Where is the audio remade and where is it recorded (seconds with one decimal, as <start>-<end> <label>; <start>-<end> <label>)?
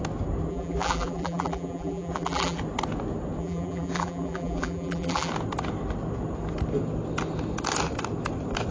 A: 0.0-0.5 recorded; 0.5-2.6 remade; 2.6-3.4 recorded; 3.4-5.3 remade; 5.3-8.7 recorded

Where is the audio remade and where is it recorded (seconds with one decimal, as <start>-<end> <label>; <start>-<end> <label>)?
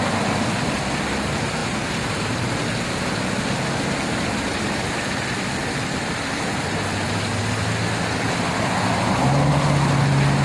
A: 0.0-1.6 recorded; 1.6-2.5 remade; 2.5-4.5 recorded; 4.5-5.0 remade; 5.0-5.6 recorded; 5.6-7.4 remade; 7.4-10.4 recorded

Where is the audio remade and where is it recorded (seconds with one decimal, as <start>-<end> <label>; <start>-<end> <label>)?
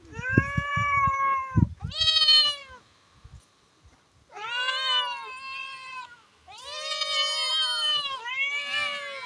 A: 0.0-0.7 recorded; 0.7-1.7 remade; 1.7-9.3 recorded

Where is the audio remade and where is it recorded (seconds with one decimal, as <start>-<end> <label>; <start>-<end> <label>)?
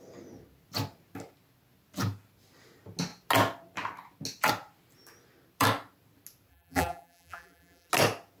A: 0.0-6.5 recorded; 6.5-7.9 remade; 7.9-8.4 recorded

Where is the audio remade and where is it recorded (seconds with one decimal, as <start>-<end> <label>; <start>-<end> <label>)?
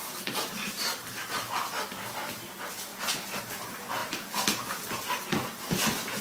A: 0.0-0.5 remade; 0.5-6.2 recorded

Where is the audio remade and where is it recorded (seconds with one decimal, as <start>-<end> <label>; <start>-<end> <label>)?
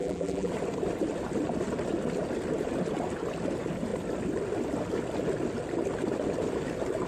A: 0.0-0.5 remade; 0.5-7.1 recorded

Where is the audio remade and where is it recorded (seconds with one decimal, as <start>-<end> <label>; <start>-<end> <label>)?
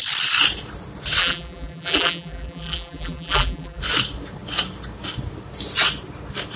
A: 0.0-1.2 recorded; 1.2-3.8 remade; 3.8-6.6 recorded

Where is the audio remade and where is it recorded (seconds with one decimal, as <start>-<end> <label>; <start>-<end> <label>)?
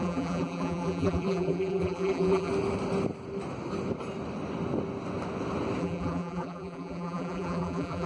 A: 0.0-2.5 remade; 2.5-5.8 recorded; 5.8-8.1 remade